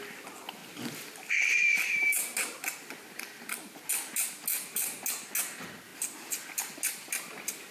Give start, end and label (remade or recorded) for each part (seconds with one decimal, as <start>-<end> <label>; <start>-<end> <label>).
0.0-7.7 recorded